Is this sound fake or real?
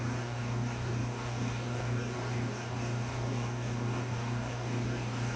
fake